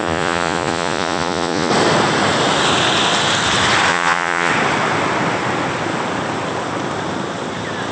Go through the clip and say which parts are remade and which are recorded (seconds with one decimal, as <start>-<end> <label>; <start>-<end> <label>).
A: 0.0-1.7 remade; 1.7-3.9 recorded; 3.9-4.5 remade; 4.5-7.9 recorded